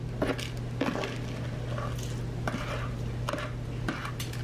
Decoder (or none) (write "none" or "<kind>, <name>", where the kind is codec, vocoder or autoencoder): none